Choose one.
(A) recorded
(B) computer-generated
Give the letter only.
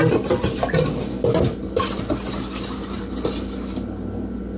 A